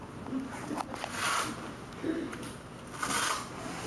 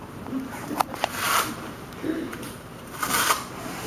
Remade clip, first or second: second